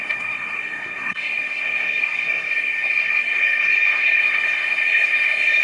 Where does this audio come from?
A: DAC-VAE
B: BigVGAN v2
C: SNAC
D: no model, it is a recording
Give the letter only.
C